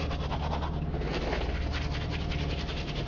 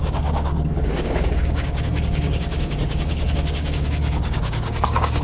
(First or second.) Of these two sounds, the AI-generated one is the second